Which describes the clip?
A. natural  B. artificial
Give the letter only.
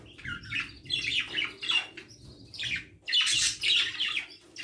A